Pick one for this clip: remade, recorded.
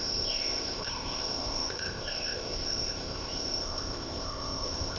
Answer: remade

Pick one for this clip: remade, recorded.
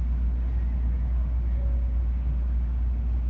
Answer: recorded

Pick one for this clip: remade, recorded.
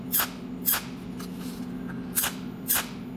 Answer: recorded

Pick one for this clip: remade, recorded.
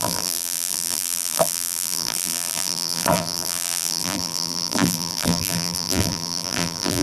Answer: remade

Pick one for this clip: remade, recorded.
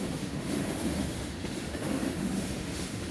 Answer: remade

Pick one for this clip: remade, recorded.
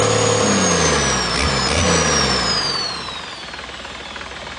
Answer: recorded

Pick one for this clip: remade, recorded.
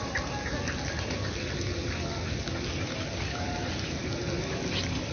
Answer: recorded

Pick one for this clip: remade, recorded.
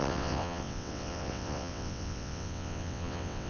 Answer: remade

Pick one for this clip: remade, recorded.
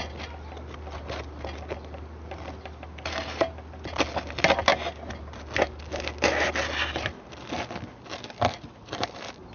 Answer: recorded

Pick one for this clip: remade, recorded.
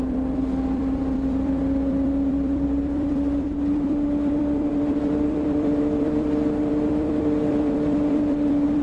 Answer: remade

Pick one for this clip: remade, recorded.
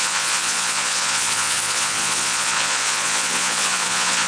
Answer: remade